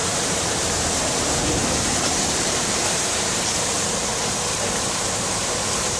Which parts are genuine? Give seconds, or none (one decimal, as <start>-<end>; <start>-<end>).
4.1-5.6

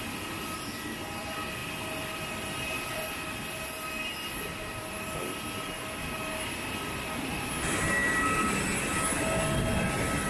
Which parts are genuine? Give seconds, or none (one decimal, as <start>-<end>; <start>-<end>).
0.0-10.3

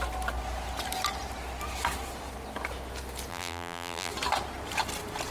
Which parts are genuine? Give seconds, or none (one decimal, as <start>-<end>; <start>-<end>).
0.0-3.3; 4.1-5.3

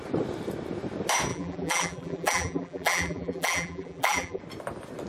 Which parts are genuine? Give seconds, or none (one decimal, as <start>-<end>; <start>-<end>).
0.0-1.3; 4.4-5.1

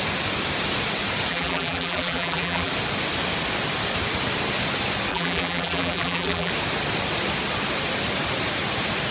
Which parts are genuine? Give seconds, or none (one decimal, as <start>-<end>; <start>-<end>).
0.0-1.3; 2.7-5.1; 6.5-9.1